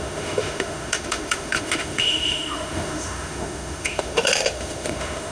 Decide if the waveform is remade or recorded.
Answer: remade